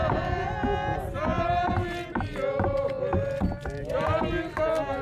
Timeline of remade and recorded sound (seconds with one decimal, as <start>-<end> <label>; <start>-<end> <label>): 0.0-5.0 recorded